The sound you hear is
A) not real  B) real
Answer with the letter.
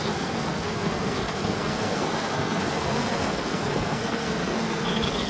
A